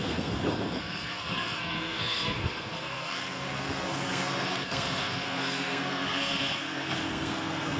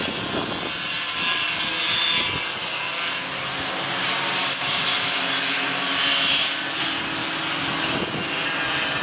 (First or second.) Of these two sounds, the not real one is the first